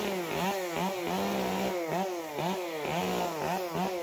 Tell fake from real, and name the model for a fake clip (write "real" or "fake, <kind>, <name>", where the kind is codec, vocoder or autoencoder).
real